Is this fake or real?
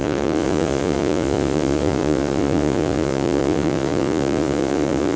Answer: fake